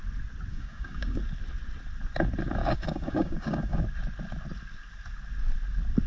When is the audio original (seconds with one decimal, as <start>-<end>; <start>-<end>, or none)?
0.0-0.5; 1.2-2.6; 3.8-6.1